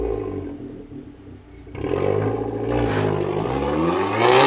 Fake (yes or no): no